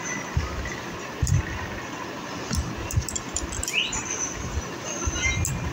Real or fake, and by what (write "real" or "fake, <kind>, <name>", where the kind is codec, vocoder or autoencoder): real